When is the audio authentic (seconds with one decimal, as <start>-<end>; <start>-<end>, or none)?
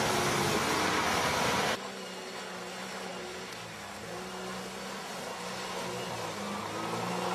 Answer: 0.0-7.3